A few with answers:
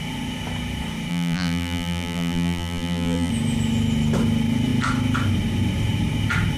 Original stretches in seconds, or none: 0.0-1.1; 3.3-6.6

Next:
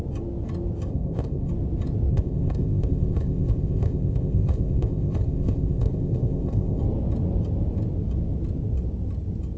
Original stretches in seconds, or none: 0.0-0.9; 1.5-2.1; 6.8-9.6

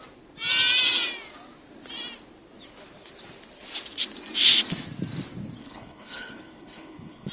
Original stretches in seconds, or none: 0.0-5.6

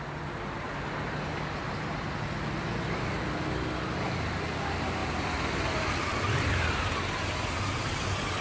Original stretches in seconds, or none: 0.0-8.4

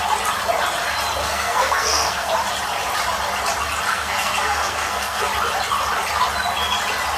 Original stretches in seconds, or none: 0.0-1.2; 2.3-3.9; 5.3-7.2

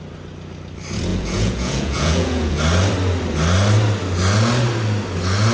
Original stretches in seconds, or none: 0.0-1.1; 2.6-5.5

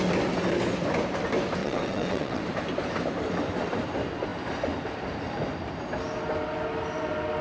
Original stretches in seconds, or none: 0.0-1.6; 2.4-7.4

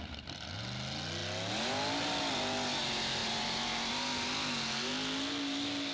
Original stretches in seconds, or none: 0.0-3.2; 3.9-5.9